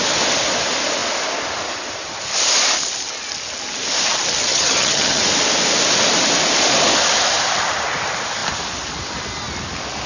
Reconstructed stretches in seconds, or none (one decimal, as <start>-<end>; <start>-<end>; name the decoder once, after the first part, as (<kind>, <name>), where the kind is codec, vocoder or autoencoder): 4.5-5.2 (vocoder, HiFi-GAN)